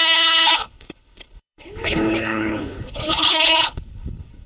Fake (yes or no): yes